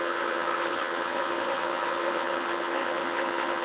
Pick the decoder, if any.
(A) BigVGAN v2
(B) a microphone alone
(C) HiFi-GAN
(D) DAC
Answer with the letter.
C